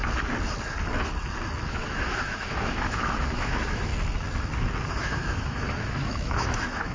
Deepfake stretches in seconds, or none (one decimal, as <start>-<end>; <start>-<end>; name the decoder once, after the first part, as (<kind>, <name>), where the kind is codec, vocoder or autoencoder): 1.7-3.9 (autoencoder, DAC-VAE); 4.9-6.9